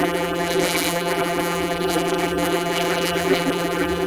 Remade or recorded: remade